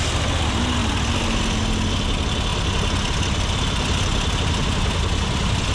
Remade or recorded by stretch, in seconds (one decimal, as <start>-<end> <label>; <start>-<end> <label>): 0.0-5.7 recorded